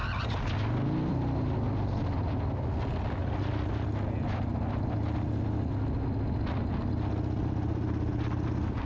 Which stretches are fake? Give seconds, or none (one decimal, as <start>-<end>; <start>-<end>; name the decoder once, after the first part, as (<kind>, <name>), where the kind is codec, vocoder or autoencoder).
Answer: none